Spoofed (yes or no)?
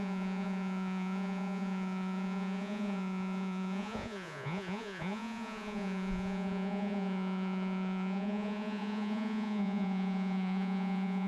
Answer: yes